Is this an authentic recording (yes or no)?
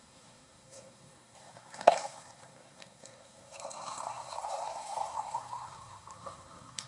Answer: no